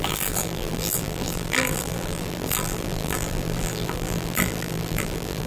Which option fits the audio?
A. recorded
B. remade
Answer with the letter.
B